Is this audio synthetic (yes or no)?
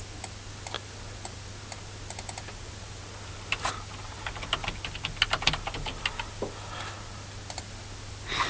no